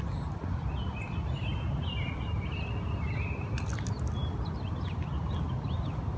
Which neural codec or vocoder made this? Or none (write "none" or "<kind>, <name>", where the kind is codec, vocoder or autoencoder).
none